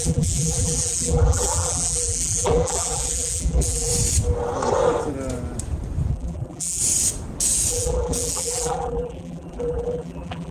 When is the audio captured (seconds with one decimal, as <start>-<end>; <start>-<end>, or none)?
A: 3.9-6.1; 6.8-7.7